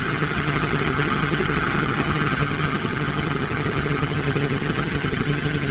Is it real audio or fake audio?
fake